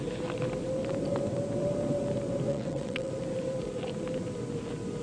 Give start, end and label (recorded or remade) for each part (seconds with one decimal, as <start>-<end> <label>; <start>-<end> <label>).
0.0-2.5 recorded; 2.5-3.1 remade; 3.1-5.0 recorded